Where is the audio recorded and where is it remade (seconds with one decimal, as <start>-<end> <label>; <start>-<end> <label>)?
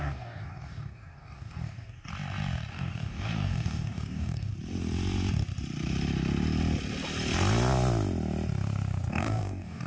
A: 0.0-2.1 remade; 2.1-2.7 recorded; 2.7-4.5 remade; 4.5-9.1 recorded; 9.1-9.9 remade